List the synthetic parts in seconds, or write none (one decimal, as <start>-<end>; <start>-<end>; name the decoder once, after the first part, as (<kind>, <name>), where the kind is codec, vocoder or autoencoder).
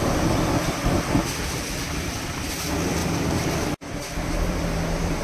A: 0.0-3.0 (vocoder, BigVGAN v2); 3.6-5.2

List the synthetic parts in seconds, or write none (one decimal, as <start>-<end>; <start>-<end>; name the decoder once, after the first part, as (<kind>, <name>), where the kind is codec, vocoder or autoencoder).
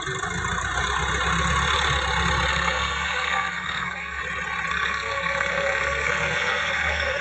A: 2.5-4.2 (codec, SNAC); 4.7-7.2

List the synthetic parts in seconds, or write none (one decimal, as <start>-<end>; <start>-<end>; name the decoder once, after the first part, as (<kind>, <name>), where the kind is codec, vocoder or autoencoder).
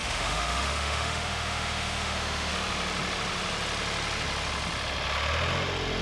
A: 0.0-2.5 (autoencoder, DAC-VAE)